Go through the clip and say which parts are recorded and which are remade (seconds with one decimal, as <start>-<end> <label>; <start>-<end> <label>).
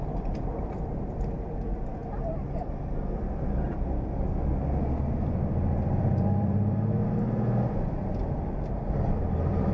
0.0-2.0 remade; 2.0-5.1 recorded; 5.1-7.0 remade; 7.0-8.7 recorded; 8.7-9.7 remade